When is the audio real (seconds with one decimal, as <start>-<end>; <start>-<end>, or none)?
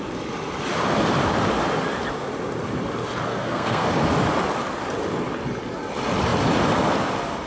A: 0.0-3.3; 3.9-7.5